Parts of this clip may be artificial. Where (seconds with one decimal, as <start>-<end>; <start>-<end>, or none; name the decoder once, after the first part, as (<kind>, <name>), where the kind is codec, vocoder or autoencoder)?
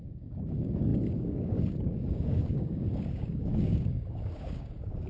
0.0-5.1 (codec, DAC)